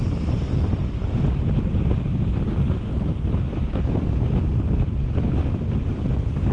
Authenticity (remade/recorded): recorded